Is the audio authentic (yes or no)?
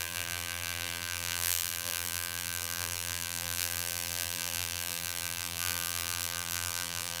no